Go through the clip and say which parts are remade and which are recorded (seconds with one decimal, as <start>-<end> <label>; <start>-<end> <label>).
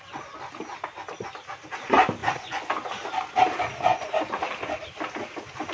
0.0-2.2 recorded; 2.2-2.7 remade; 2.7-3.9 recorded; 3.9-4.5 remade; 4.5-5.7 recorded